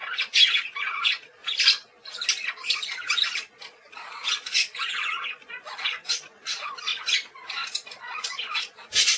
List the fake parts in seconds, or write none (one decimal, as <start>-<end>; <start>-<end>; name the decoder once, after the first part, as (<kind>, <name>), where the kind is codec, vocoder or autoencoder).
0.0-1.4 (vocoder, Vocos); 2.5-9.2

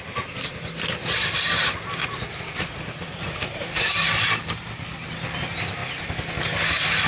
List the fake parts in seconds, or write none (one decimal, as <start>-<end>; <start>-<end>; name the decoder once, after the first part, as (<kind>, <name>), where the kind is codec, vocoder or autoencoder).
2.0-3.8 (vocoder, Vocos)

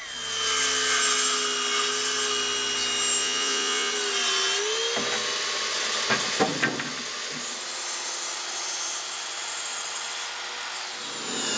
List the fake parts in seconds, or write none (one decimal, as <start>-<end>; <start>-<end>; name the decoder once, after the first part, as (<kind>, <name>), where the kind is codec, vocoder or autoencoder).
3.2-3.9 (vocoder, Vocos)

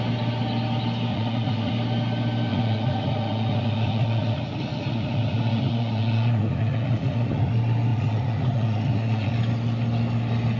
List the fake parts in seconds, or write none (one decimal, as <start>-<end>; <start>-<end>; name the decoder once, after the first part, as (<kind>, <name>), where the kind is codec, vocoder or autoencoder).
1.1-1.7 (vocoder, Vocos); 2.5-7.5; 7.9-9.3

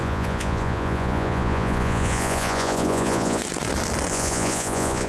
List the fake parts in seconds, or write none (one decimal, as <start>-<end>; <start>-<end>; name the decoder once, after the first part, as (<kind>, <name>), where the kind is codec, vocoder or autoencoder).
0.0-3.4 (vocoder, Vocos); 4.1-5.1

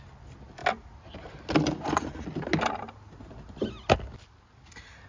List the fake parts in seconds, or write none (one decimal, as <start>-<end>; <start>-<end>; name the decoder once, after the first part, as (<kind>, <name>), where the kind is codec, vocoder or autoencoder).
none

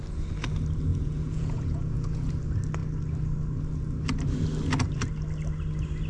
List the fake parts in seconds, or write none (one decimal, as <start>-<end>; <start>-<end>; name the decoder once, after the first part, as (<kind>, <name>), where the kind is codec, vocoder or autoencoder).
0.9-2.3 (vocoder, Vocos)